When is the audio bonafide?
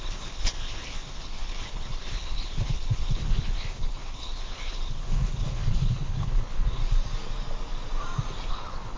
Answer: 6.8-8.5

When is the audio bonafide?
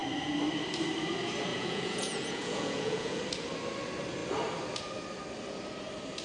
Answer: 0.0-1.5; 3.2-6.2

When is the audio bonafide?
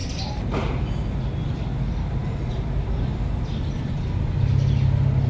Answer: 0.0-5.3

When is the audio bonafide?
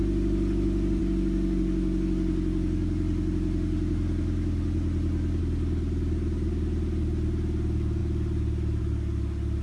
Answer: 0.0-9.6